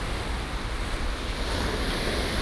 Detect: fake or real real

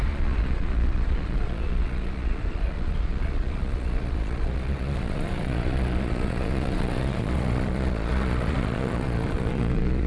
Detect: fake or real fake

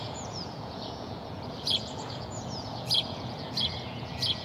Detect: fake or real fake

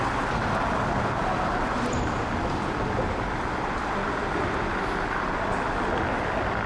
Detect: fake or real real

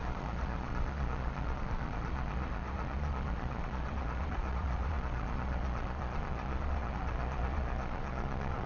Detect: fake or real fake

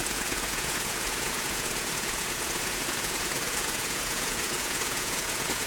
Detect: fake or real fake